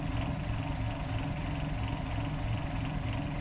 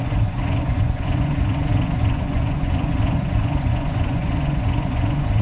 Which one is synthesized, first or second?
second